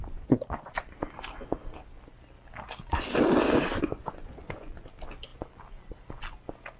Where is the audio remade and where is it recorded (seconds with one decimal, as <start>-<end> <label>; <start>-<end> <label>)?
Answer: 0.0-0.7 remade; 0.7-4.0 recorded; 4.0-4.7 remade; 4.7-6.8 recorded